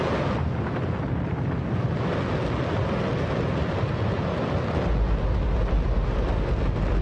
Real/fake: real